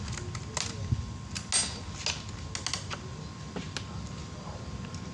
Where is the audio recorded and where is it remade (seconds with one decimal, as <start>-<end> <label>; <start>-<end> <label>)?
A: 0.0-5.1 recorded